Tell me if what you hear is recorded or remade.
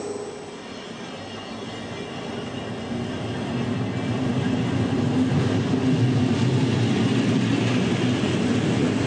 recorded